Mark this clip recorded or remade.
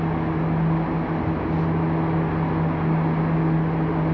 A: recorded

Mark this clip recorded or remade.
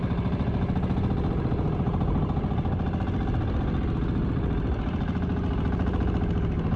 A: recorded